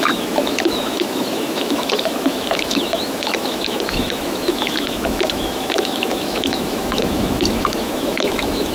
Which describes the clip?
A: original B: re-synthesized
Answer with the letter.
B